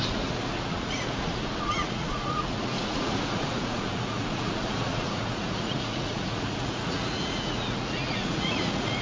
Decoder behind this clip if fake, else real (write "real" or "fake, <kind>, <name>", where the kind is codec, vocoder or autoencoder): fake, vocoder, Vocos